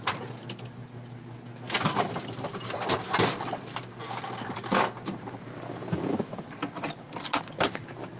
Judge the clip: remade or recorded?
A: recorded